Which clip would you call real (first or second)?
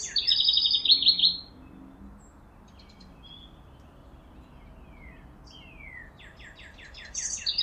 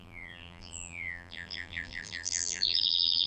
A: first